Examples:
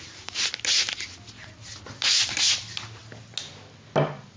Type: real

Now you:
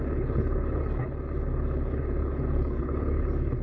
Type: fake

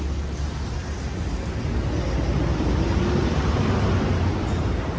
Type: real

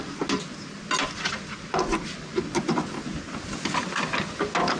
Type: real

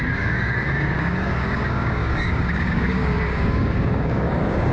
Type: fake